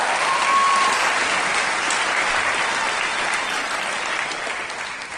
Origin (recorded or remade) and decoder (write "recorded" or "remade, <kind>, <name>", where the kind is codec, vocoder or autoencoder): recorded